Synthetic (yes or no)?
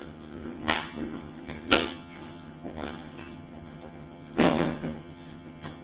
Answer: yes